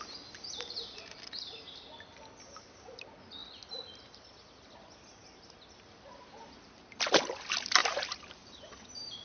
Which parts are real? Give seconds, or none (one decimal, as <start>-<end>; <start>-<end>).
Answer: 0.0-7.8; 8.7-9.2